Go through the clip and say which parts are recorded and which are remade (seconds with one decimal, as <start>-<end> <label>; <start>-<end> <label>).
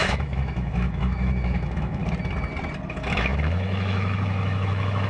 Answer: 0.0-2.0 remade; 2.0-2.9 recorded; 2.9-5.1 remade